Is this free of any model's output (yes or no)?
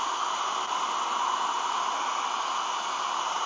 yes